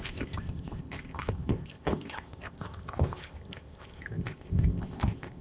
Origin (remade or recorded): remade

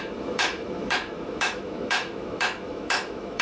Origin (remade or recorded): remade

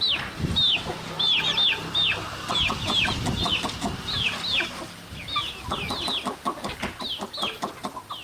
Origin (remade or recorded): recorded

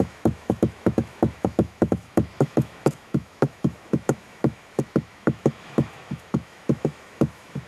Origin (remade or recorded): remade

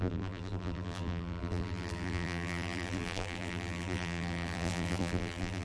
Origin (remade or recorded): remade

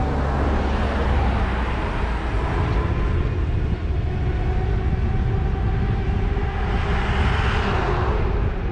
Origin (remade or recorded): recorded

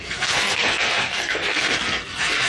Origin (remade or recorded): remade